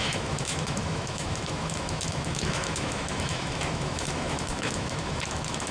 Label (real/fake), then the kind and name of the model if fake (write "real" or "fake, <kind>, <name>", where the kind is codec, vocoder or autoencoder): fake, autoencoder, DAC-VAE